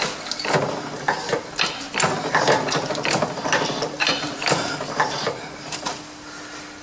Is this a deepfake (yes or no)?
no